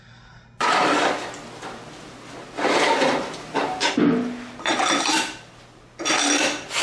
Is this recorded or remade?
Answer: recorded